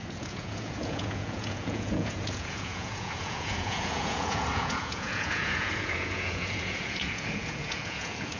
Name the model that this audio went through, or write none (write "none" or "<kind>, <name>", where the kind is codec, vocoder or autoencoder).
vocoder, Vocos